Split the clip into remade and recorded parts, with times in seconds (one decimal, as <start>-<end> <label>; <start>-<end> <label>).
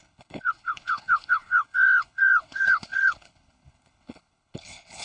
0.0-5.0 remade